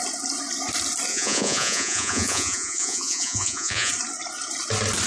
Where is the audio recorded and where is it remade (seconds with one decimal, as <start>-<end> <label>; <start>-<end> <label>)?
0.0-1.1 recorded; 1.1-3.9 remade; 3.9-5.1 recorded